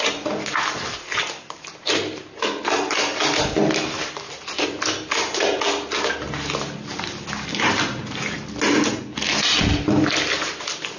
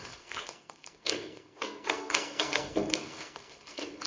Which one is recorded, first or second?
first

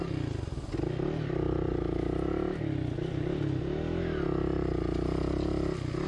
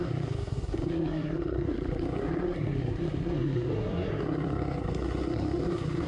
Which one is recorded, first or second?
first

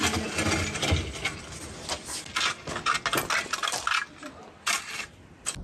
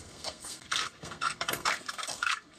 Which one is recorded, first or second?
first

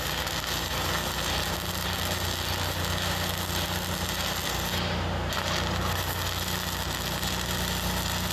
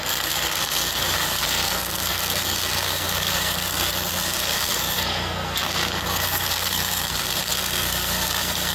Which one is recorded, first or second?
first